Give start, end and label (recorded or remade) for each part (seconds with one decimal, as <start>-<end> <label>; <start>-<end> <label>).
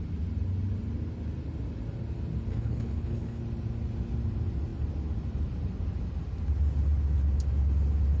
0.0-2.5 recorded; 2.5-3.4 remade; 3.4-8.2 recorded